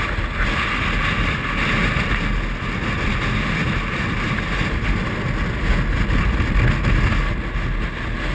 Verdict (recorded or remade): recorded